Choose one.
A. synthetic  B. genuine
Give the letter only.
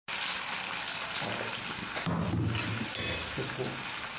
B